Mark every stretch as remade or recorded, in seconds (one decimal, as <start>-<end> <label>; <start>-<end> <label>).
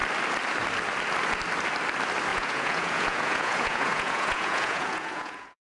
0.0-2.3 recorded; 2.3-5.6 remade